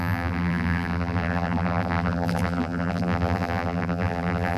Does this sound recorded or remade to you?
remade